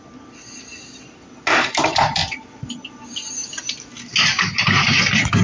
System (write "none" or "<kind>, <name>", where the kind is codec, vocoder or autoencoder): none